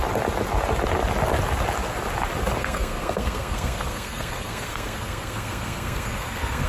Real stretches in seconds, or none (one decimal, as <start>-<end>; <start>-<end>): 0.0-2.6